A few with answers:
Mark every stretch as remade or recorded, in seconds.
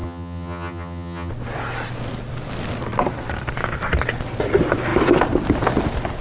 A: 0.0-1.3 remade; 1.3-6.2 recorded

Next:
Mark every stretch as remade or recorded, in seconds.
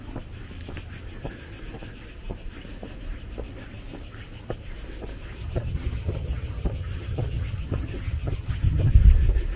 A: 0.0-5.4 recorded; 5.4-8.9 remade; 8.9-9.6 recorded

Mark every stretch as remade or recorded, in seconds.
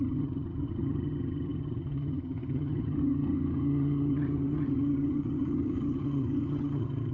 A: 0.0-7.1 remade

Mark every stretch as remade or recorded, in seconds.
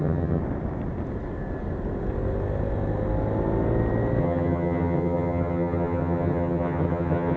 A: 0.0-0.4 remade; 0.4-4.2 recorded; 4.2-7.4 remade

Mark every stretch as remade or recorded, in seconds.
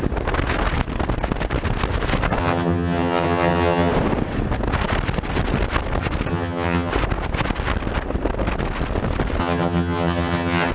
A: 0.0-2.4 recorded; 2.4-3.9 remade; 3.9-6.3 recorded; 6.3-6.9 remade; 6.9-9.4 recorded; 9.4-10.7 remade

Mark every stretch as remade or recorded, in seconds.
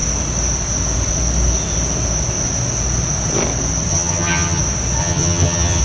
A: 0.0-3.9 recorded; 3.9-4.6 remade; 4.6-5.0 recorded; 5.0-5.8 remade